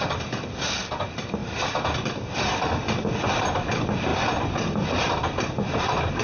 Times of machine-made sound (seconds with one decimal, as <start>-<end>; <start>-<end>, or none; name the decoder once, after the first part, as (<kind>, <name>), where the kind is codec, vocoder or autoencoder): 1.4-2.7 (vocoder, BigVGAN v2)